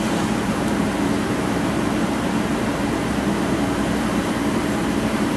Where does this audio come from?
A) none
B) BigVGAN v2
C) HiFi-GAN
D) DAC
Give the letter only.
B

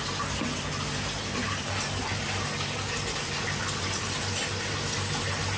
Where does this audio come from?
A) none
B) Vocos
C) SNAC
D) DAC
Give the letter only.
A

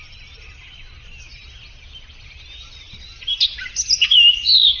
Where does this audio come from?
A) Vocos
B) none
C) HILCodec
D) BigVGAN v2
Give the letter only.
B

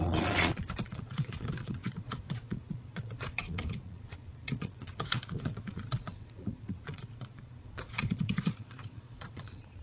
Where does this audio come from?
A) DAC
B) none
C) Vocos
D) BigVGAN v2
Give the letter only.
C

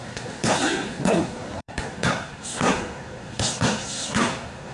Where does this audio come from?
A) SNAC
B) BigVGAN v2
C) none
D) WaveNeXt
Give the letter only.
A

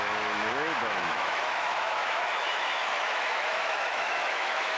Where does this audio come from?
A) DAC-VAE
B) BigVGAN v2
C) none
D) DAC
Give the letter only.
A